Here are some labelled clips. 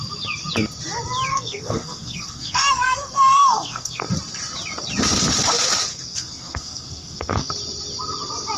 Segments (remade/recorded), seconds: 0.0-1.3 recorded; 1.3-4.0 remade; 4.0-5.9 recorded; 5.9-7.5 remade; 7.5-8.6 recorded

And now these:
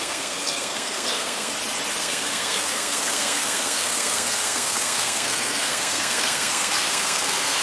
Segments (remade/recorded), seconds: 0.0-1.5 remade; 1.5-2.0 recorded; 2.0-7.6 remade

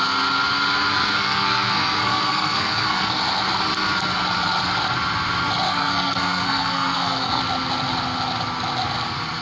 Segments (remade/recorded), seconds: 0.0-0.9 recorded; 0.9-3.2 remade; 3.2-5.7 recorded; 5.7-7.4 remade; 7.4-9.4 recorded

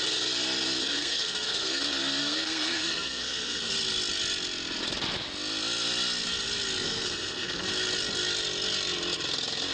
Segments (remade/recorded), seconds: 0.0-0.8 recorded; 0.8-1.8 remade; 1.8-2.2 recorded; 2.2-3.7 remade; 3.7-6.8 recorded; 6.8-7.7 remade; 7.7-9.7 recorded

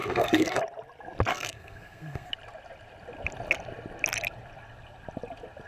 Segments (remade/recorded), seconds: 0.0-0.6 remade; 0.6-1.3 recorded; 1.3-2.3 remade; 2.3-5.7 recorded

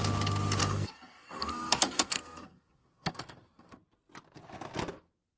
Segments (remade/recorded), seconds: 0.0-0.6 recorded; 0.6-3.8 remade; 3.8-4.9 recorded; 4.9-5.4 remade